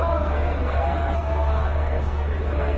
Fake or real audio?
fake